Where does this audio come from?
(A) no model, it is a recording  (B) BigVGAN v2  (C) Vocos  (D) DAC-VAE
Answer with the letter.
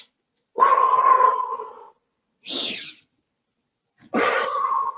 A